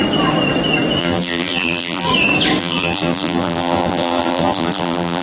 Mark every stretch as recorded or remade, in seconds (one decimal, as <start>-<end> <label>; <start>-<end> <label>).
0.0-1.0 recorded; 1.0-2.1 remade; 2.1-2.6 recorded; 2.6-5.2 remade